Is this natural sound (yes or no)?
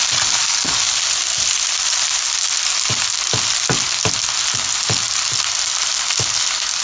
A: yes